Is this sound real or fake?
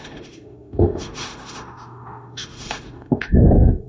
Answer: fake